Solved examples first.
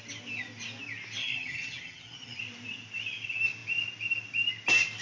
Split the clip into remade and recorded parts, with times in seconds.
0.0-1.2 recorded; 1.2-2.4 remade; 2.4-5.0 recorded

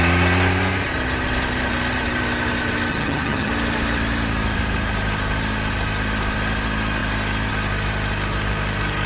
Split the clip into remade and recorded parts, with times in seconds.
0.0-2.9 recorded; 2.9-3.5 remade; 3.5-9.1 recorded

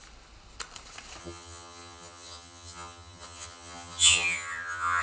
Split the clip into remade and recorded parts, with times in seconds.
0.0-1.2 recorded; 1.2-5.0 remade

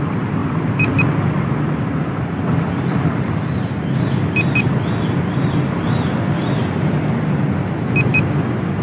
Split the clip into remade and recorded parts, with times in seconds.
0.0-8.8 recorded

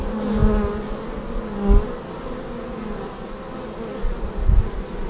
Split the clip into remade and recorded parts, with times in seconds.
0.0-5.1 recorded

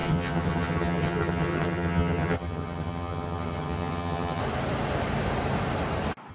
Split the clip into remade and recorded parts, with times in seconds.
0.0-4.4 remade; 4.4-6.3 recorded

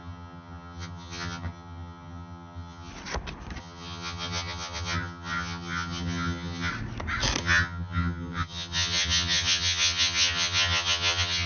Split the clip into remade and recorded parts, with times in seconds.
0.0-2.9 remade; 2.9-3.6 recorded; 3.6-6.7 remade; 6.7-7.4 recorded; 7.4-11.5 remade

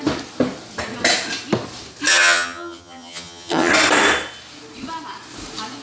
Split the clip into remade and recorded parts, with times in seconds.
0.0-2.1 recorded; 2.1-3.7 remade; 3.7-5.8 recorded